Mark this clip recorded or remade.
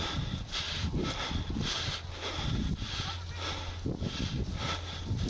recorded